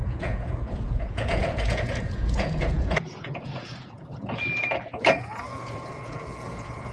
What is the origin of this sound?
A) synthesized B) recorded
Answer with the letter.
A